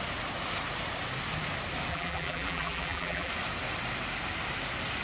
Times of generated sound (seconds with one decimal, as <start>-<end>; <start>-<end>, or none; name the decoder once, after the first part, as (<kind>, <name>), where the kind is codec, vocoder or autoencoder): 1.9-3.3 (vocoder, BigVGAN v2)